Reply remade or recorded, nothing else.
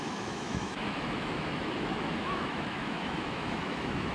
remade